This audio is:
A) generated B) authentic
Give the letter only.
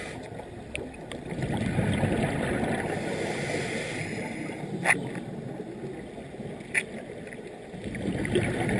B